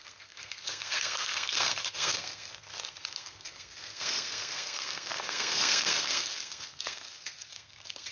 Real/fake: fake